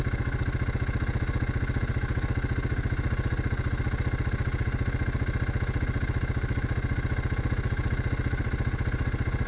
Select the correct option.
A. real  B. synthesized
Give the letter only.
A